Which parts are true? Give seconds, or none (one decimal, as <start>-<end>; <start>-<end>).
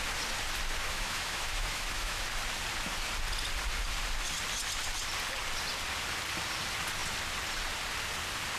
0.0-0.8; 2.2-8.6